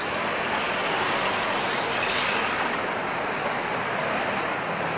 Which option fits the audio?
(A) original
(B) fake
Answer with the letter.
A